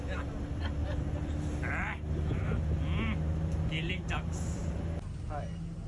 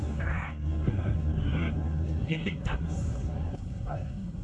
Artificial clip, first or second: second